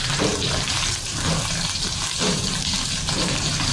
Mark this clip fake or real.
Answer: fake